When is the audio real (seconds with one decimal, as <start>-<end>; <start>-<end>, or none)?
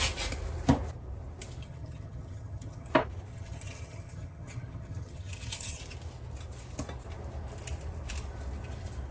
0.0-1.6; 2.9-3.3; 5.8-9.1